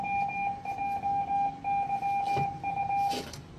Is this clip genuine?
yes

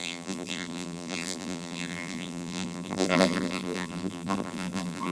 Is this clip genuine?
no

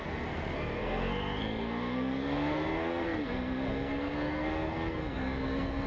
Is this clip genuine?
no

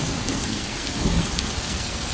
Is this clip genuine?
no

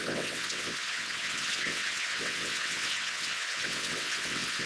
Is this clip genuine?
no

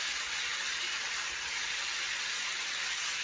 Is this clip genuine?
yes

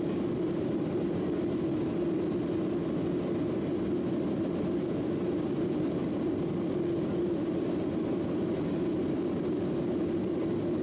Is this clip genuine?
yes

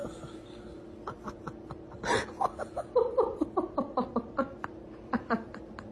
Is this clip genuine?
yes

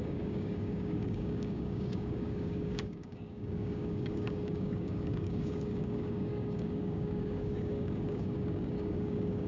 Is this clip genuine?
no